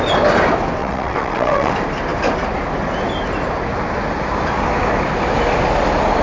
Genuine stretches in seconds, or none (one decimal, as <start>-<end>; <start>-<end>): 0.0-0.8; 1.7-6.2